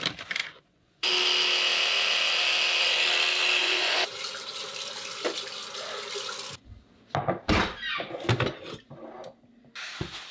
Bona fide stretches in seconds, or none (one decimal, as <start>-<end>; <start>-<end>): 0.0-0.4; 1.1-3.6; 4.2-10.3